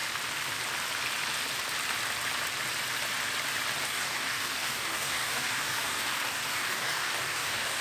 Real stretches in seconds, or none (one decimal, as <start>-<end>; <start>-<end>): 0.0-3.9